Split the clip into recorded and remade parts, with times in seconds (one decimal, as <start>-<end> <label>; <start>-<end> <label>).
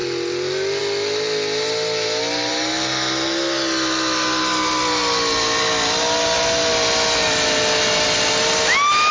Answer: 0.0-9.1 recorded